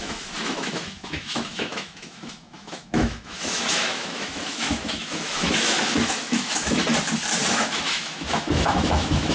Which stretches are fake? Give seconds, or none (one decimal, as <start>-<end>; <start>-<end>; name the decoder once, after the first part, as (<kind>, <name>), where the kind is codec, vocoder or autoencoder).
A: 0.0-6.8 (autoencoder, DAC-VAE); 7.5-9.3